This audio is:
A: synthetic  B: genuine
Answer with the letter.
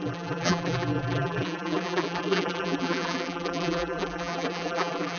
A